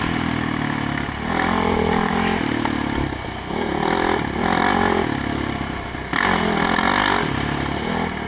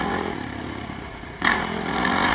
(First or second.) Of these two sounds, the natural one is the first